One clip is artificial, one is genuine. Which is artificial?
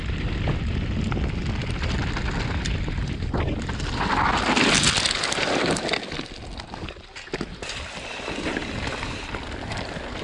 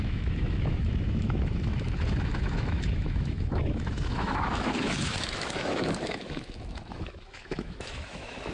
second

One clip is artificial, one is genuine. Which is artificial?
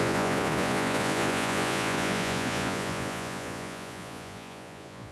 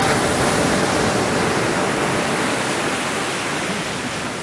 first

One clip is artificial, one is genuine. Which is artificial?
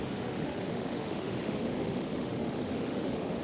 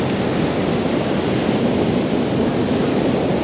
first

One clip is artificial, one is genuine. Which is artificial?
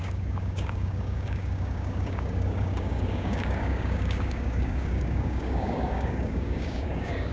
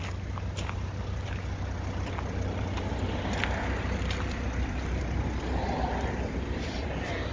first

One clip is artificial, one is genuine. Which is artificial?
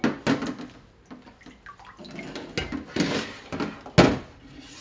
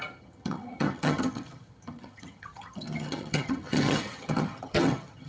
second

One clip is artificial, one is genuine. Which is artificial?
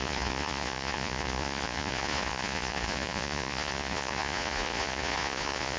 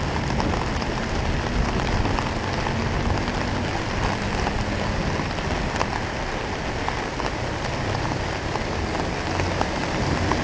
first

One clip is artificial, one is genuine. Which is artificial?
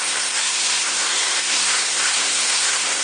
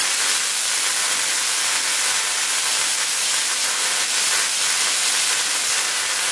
first